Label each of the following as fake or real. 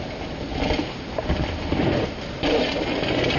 real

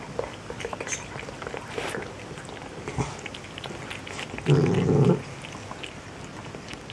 real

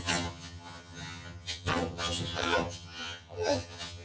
fake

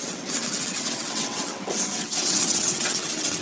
fake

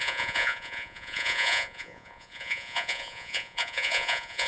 fake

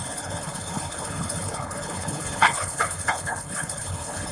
fake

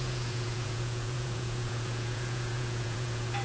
fake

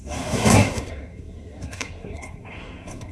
fake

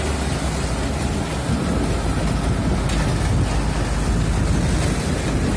real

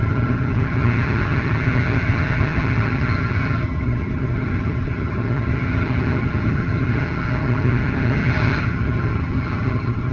fake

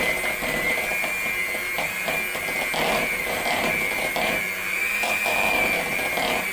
real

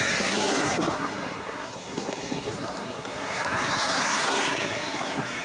fake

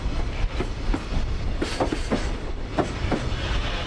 real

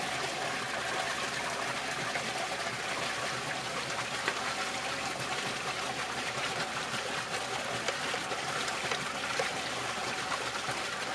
real